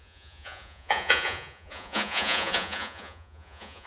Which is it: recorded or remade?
remade